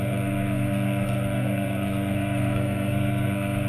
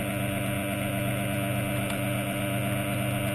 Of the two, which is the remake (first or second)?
first